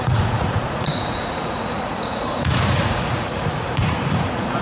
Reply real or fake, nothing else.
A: fake